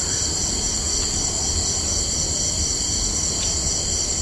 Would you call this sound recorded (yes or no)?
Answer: yes